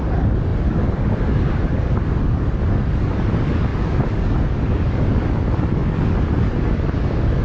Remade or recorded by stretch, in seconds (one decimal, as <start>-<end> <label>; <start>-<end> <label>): 0.0-7.4 remade